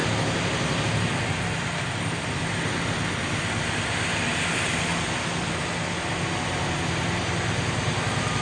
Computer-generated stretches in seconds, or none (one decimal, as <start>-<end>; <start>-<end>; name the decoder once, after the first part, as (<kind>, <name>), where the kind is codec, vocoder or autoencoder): none

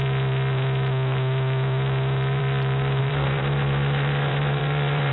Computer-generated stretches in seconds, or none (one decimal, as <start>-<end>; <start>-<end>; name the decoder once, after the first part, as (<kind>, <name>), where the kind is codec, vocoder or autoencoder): 3.0-5.1 (vocoder, BigVGAN v2)

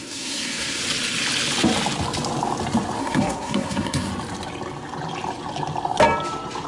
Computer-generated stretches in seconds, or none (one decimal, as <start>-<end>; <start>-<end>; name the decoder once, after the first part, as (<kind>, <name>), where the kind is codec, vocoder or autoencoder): 0.0-0.8 (codec, SNAC); 3.0-4.1

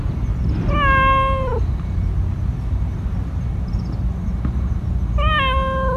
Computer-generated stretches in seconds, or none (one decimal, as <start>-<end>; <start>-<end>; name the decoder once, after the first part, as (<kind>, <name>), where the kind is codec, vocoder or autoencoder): none

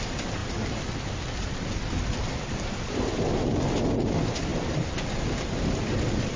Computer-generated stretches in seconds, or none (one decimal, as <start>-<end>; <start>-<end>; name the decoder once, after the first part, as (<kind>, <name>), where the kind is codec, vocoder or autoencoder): 0.4-3.6 (vocoder, BigVGAN v2); 4.5-5.2

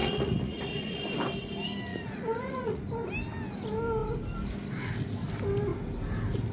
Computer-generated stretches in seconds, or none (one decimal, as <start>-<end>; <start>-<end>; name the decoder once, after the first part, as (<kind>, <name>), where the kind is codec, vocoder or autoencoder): 0.0-1.0 (vocoder, Vocos); 1.9-2.8

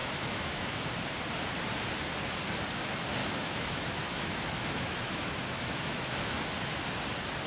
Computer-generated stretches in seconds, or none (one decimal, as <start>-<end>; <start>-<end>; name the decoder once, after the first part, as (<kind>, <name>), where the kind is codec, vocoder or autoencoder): 0.0-0.8 (autoencoder, DAC-VAE); 3.2-6.3

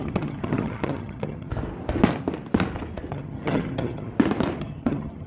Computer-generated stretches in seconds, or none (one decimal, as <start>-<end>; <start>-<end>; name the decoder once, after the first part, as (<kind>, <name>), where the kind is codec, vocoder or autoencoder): 0.0-1.5 (vocoder, HiFi-GAN); 3.1-4.1; 4.6-5.3